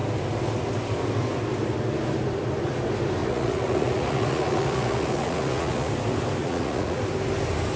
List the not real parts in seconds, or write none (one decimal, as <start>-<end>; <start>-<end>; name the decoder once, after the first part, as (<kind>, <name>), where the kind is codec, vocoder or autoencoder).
3.2-5.9 (vocoder, Vocos); 6.4-7.0